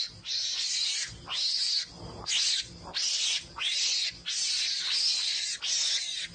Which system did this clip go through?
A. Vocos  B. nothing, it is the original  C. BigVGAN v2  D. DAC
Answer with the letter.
B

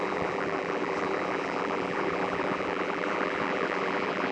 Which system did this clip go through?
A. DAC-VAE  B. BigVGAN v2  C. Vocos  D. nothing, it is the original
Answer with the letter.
B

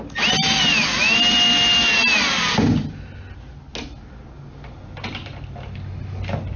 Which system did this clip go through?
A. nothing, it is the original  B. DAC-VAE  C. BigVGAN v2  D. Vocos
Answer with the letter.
A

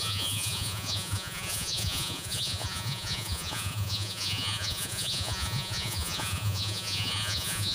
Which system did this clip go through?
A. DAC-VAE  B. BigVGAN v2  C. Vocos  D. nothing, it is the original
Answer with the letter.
C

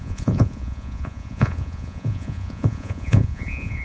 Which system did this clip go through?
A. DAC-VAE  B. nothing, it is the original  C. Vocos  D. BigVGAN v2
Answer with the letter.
C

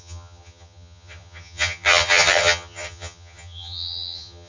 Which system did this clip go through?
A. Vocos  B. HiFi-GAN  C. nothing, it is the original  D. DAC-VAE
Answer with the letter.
B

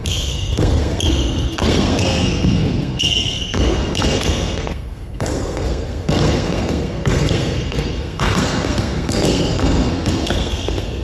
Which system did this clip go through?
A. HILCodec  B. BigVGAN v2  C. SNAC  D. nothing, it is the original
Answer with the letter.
C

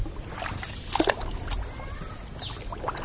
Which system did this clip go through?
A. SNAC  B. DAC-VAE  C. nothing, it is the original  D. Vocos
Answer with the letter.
C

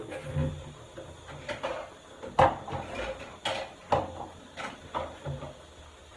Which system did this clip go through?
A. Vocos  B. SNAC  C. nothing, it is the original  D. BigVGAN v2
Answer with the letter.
C